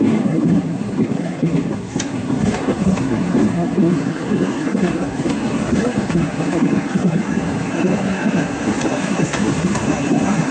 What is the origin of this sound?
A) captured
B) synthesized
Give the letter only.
B